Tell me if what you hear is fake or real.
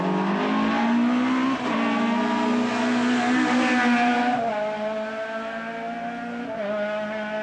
real